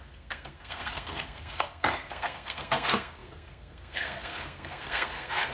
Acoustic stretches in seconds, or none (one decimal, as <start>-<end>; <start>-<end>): none